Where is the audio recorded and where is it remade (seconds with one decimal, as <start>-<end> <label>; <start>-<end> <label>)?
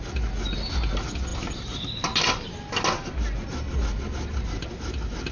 0.0-5.3 recorded